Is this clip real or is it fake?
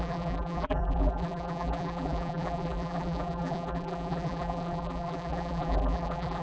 fake